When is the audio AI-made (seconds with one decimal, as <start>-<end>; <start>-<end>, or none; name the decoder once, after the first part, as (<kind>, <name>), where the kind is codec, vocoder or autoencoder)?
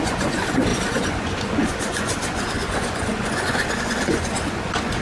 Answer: 0.0-5.0 (vocoder, Vocos)